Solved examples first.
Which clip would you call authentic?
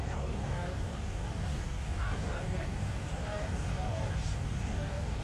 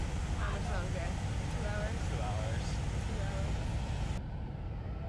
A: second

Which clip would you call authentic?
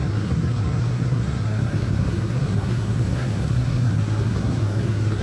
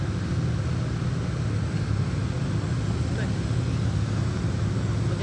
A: second